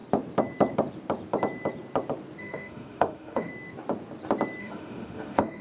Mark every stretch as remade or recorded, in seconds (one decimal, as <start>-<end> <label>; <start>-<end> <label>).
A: 0.0-2.4 recorded; 2.4-3.5 remade; 3.5-4.6 recorded; 4.6-5.6 remade